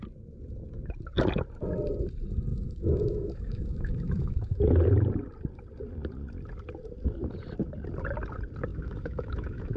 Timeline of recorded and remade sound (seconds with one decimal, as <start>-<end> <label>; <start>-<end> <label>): 0.0-2.5 recorded; 2.5-4.6 remade; 4.6-8.7 recorded; 8.7-9.8 remade